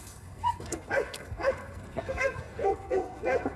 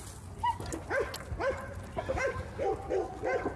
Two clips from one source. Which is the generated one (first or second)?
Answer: first